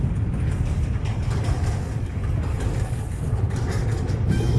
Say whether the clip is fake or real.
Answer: fake